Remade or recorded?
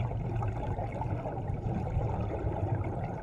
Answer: remade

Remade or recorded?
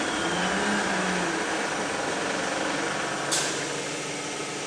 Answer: recorded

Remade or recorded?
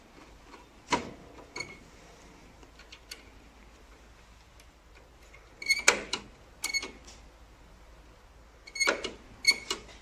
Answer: recorded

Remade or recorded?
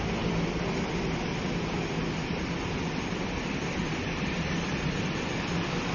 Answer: remade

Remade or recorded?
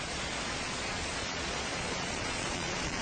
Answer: remade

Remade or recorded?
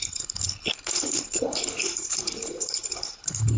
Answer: remade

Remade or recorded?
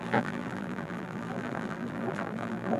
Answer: remade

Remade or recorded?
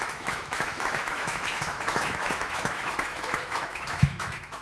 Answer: remade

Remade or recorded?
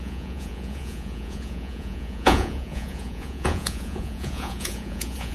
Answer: remade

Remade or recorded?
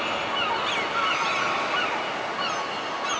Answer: recorded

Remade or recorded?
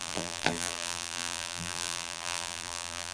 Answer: remade